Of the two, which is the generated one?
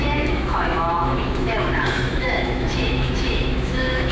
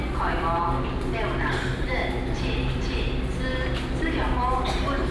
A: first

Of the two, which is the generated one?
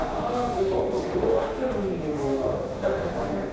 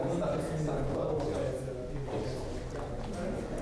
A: first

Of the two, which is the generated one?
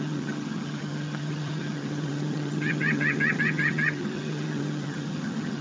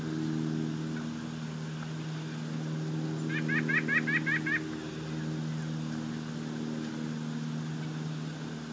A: first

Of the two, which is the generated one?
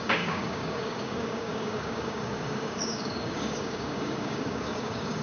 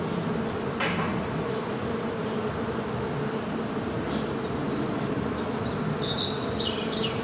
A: first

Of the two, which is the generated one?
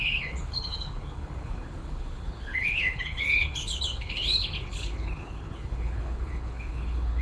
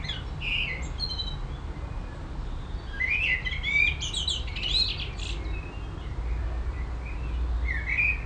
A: first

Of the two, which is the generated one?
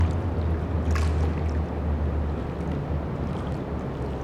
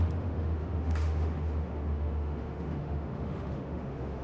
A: second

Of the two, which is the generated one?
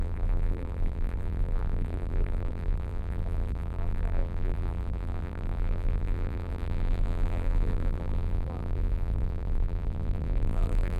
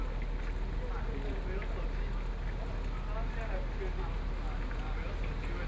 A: first